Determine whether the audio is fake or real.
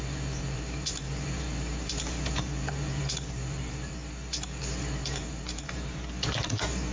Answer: fake